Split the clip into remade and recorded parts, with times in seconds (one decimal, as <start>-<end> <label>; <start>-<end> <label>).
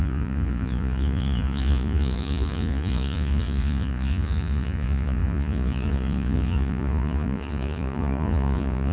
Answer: 0.0-8.9 remade